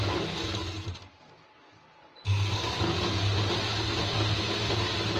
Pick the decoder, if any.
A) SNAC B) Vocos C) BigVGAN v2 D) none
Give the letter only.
D